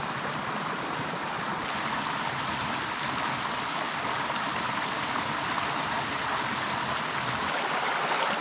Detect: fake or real real